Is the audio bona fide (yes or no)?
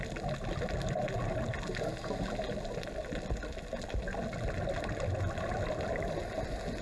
yes